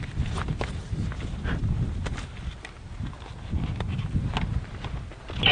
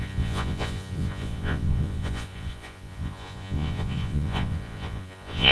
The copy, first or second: second